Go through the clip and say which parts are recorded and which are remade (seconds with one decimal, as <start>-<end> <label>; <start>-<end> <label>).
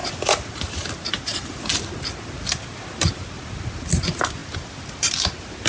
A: 0.0-5.7 recorded